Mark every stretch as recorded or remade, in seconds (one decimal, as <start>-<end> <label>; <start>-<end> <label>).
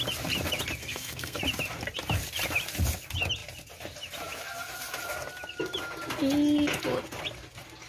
0.0-0.8 recorded; 0.8-1.4 remade; 1.4-7.9 recorded